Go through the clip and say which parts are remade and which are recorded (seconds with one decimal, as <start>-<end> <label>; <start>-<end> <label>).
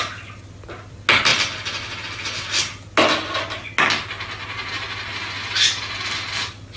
0.0-6.8 recorded